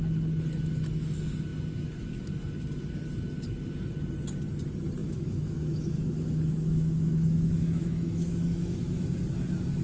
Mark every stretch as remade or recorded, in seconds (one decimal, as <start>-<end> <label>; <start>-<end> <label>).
0.0-5.0 recorded; 5.0-9.2 remade; 9.2-9.8 recorded